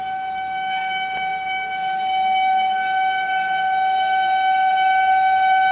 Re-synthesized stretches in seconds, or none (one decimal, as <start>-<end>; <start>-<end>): none